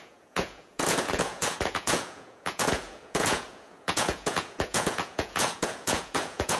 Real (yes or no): no